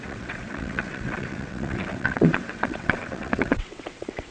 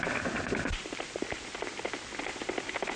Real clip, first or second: second